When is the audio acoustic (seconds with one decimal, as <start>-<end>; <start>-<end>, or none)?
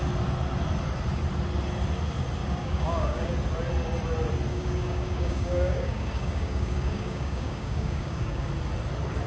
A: 0.0-2.4; 3.3-4.5; 8.5-9.3